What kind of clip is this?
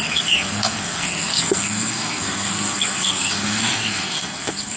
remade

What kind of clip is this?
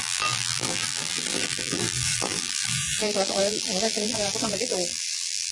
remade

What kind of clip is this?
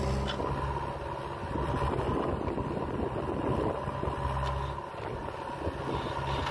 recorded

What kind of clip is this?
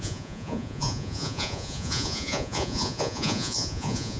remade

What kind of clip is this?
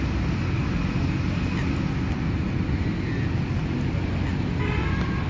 recorded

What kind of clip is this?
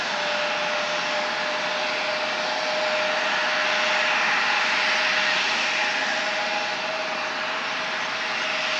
recorded